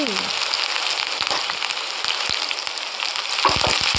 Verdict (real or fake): real